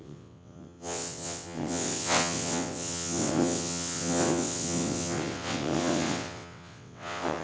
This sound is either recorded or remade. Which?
remade